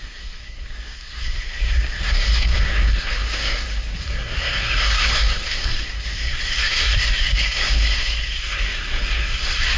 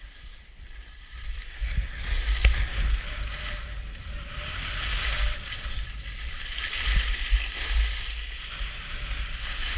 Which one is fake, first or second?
first